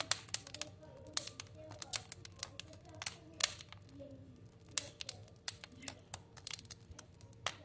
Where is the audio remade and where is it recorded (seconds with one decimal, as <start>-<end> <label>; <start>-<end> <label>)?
0.0-5.2 recorded; 5.2-6.6 remade; 6.6-7.6 recorded